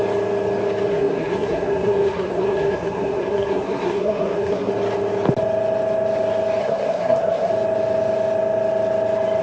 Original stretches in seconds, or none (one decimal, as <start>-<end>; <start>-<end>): 0.0-0.9; 4.7-6.6; 7.5-9.4